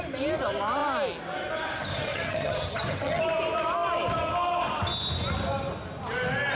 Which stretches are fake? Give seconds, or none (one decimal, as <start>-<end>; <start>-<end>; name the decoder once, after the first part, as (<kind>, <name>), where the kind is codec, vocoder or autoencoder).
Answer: 1.9-3.2 (vocoder, HiFi-GAN)